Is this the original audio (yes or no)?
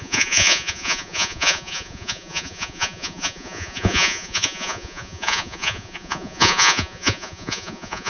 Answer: no